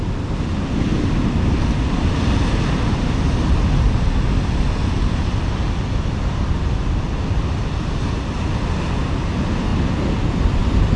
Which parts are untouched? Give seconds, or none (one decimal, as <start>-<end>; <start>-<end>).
0.0-11.0